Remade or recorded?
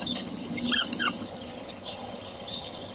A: remade